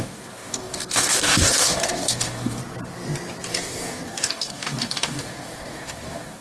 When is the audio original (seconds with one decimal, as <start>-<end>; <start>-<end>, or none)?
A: 2.6-3.5